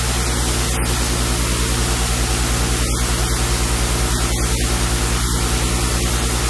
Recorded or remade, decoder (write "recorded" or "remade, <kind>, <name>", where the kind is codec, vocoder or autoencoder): recorded